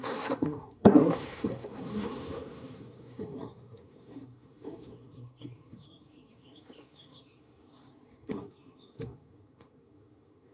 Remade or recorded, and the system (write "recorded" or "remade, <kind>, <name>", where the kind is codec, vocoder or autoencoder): remade, codec, SNAC